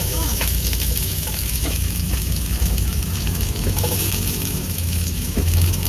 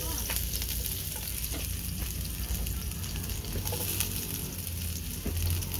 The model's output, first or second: first